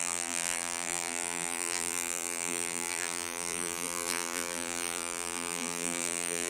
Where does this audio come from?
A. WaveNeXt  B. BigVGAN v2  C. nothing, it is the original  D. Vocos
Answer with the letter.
B